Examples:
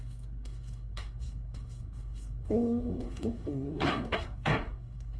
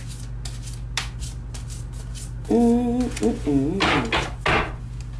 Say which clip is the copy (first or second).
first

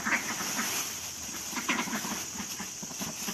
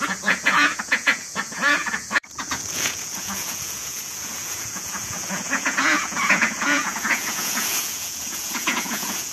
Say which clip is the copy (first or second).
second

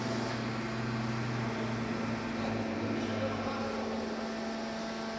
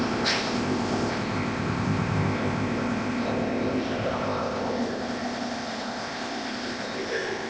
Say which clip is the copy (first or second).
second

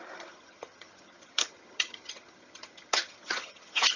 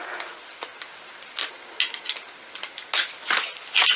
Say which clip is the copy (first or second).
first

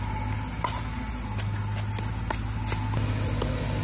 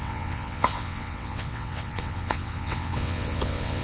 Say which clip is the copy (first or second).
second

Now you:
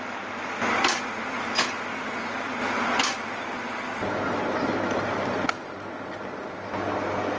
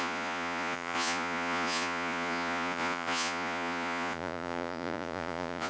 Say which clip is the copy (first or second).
second